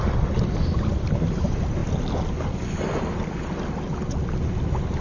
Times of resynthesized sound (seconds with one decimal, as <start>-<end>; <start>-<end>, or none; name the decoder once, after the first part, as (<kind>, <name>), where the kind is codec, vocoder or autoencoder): 0.0-1.8 (vocoder, BigVGAN v2)

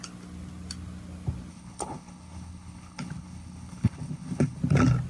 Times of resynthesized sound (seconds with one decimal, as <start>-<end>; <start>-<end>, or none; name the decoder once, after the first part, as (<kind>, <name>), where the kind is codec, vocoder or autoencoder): 1.5-4.6 (codec, HILCodec)

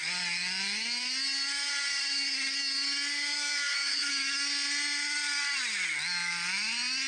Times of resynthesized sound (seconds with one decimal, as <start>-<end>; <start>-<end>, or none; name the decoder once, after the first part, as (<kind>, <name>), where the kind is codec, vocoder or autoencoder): 3.3-4.1 (autoencoder, DAC-VAE)

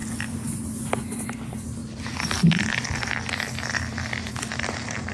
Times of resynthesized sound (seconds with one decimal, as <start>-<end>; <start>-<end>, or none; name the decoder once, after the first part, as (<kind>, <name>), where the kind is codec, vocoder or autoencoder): 1.2-1.8 (vocoder, BigVGAN v2); 4.3-5.1

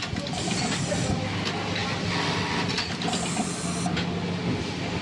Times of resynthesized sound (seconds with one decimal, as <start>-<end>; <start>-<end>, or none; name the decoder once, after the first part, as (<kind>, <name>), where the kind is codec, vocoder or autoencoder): none

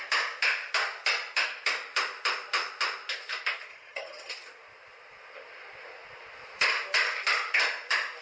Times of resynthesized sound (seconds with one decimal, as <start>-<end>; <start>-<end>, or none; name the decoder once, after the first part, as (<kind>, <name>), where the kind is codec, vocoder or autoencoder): 3.7-4.3 (vocoder, HiFi-GAN)

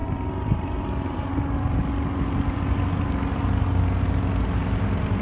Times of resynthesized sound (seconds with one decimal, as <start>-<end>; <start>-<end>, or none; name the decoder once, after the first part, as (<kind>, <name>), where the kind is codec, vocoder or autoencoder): 0.0-1.3 (vocoder, BigVGAN v2)

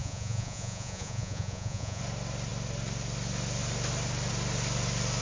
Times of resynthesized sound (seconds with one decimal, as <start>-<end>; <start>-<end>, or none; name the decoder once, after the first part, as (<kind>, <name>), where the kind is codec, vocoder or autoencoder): 0.0-2.0 (vocoder, Vocos)